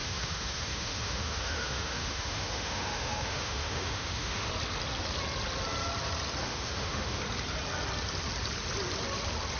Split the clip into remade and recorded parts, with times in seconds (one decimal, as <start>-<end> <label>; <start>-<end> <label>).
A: 0.0-4.5 remade; 4.5-6.4 recorded; 6.4-7.2 remade; 7.2-9.6 recorded